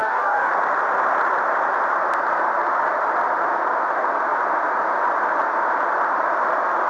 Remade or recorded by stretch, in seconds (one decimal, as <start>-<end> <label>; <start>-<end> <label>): 0.0-0.5 remade; 0.5-6.9 recorded